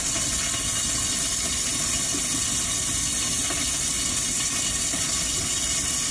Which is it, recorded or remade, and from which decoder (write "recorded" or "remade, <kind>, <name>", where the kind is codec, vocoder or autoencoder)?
recorded